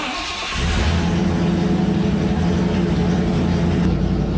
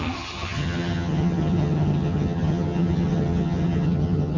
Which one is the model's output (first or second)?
second